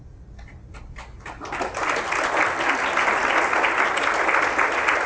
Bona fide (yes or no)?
yes